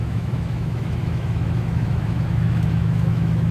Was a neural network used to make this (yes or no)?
yes